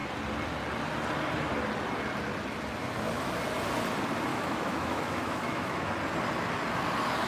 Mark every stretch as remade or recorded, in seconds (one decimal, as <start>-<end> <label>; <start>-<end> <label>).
0.0-4.3 recorded; 4.3-5.9 remade; 5.9-7.3 recorded